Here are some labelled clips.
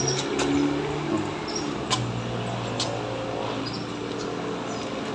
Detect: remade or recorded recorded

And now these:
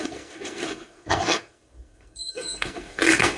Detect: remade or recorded remade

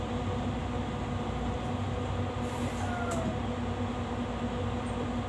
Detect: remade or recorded recorded